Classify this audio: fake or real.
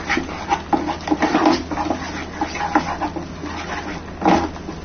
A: real